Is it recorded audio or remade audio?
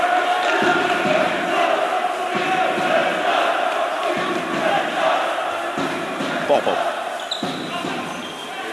recorded